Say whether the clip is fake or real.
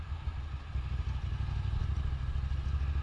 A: real